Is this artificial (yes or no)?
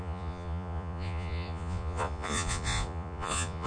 yes